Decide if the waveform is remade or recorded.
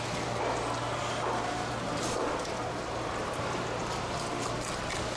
recorded